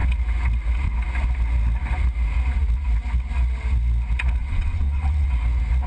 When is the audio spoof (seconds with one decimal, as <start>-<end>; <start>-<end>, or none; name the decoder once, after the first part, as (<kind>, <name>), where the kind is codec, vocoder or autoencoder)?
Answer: 4.4-5.3 (vocoder, WaveNeXt)